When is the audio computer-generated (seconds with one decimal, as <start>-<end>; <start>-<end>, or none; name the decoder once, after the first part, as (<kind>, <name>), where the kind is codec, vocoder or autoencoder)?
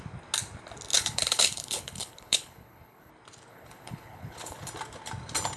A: 0.9-3.1 (codec, HILCodec); 3.5-4.7